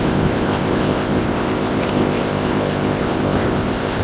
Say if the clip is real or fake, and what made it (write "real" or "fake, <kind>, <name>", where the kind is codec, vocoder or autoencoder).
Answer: fake, codec, ZipCodec